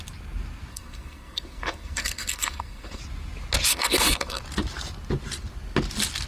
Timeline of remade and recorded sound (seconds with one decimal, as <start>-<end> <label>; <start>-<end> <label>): 0.0-0.7 recorded; 0.7-3.0 remade; 3.0-3.7 recorded; 3.7-4.4 remade; 4.4-6.3 recorded